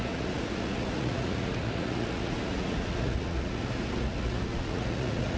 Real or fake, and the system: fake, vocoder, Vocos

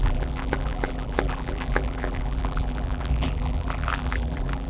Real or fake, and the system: fake, vocoder, BigVGAN v2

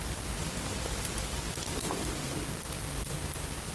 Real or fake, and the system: real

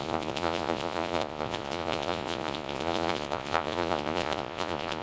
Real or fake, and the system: fake, vocoder, Vocos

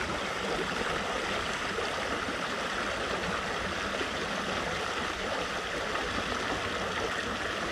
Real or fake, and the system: real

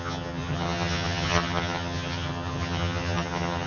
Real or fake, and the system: fake, vocoder, HiFi-GAN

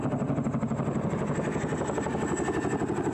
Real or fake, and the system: real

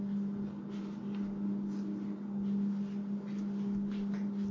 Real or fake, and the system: real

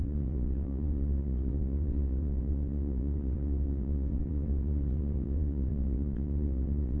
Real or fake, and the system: fake, vocoder, WaveNeXt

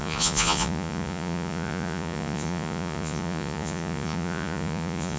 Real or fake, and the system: fake, vocoder, Vocos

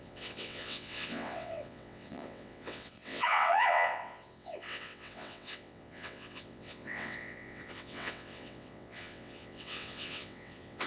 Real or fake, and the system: fake, vocoder, WaveNeXt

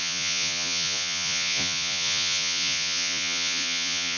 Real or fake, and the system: fake, vocoder, Vocos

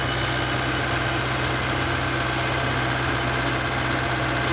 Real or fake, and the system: real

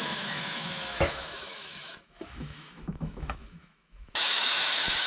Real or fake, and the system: fake, autoencoder, DAC-VAE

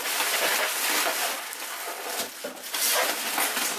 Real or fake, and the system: real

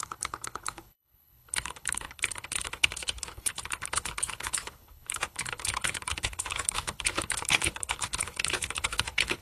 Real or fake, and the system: fake, codec, HILCodec